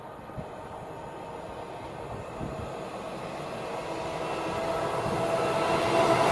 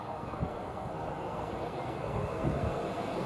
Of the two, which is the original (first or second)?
first